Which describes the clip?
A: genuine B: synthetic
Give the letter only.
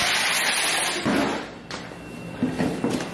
A